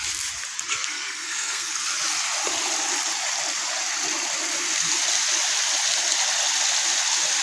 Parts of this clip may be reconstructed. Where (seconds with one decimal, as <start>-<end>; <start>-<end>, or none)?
0.7-1.7